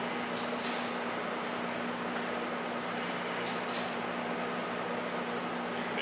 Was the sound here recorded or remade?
recorded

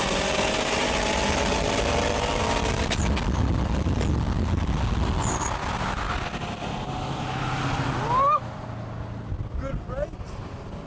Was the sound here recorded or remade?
recorded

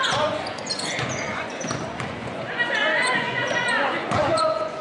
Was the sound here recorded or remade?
remade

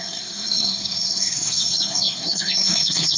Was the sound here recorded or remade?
remade